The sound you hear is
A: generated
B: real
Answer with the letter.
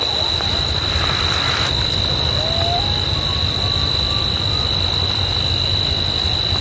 B